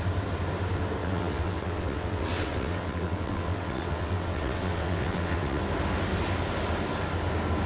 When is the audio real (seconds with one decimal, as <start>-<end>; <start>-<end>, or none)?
0.0-1.0; 5.6-7.7